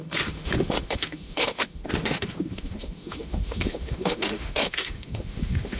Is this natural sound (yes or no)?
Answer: no